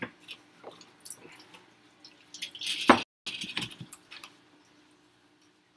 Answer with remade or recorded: recorded